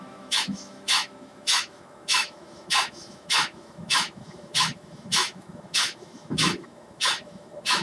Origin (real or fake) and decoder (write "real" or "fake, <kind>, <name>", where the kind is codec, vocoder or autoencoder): fake, autoencoder, DAC-VAE